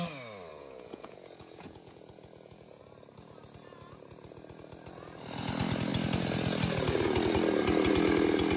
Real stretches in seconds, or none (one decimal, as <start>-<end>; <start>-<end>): 0.0-0.5; 2.8-8.6

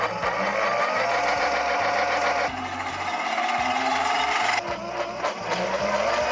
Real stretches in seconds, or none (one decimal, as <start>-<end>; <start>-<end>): 0.0-6.3

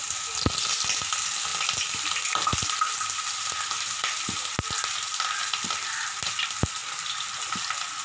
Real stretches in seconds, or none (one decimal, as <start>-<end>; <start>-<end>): 0.0-1.5; 3.5-5.4; 6.0-6.8; 7.4-8.0

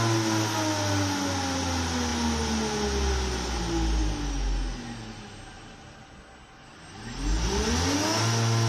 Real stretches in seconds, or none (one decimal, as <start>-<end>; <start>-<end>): 0.0-8.7

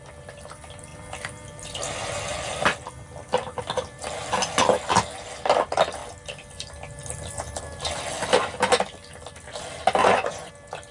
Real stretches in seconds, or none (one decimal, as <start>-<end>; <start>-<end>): 0.0-10.0; 10.5-10.9

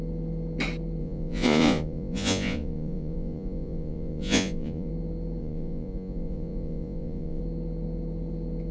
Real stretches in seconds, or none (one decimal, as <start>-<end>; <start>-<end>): 0.0-1.0; 4.9-5.4; 7.4-8.7